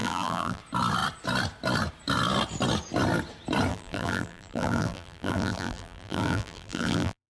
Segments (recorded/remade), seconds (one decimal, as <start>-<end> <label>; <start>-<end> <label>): 0.0-0.6 remade; 0.6-3.7 recorded; 3.7-7.3 remade